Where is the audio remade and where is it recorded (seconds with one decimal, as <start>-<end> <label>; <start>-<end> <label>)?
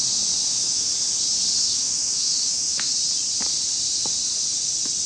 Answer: 0.0-0.5 recorded; 0.5-0.9 remade; 0.9-1.6 recorded; 1.6-2.9 remade; 2.9-5.1 recorded